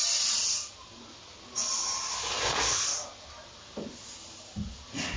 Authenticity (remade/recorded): recorded